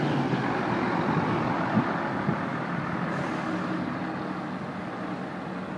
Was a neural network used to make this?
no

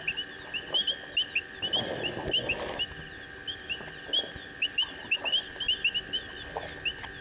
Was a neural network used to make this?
no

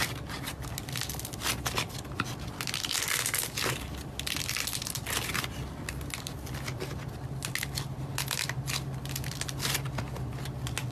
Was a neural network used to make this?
no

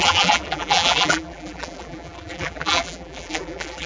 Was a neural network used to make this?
yes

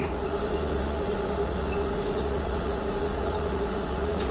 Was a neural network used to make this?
yes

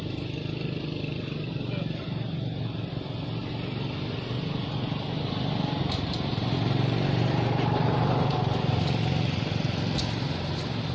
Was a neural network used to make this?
no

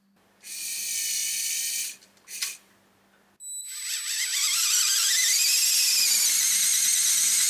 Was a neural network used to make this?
no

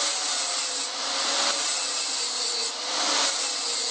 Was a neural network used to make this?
no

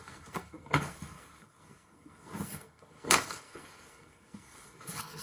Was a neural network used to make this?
yes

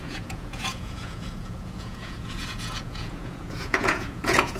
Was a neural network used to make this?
yes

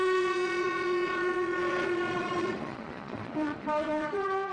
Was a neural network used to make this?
yes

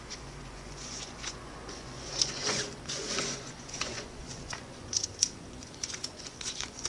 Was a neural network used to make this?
yes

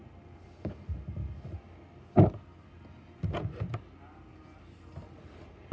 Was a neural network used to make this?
no